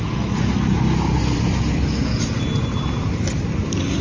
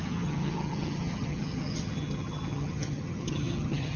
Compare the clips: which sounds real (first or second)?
first